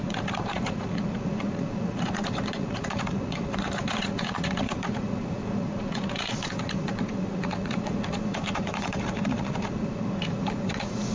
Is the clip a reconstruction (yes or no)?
yes